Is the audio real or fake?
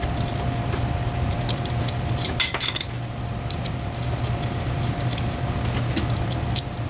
real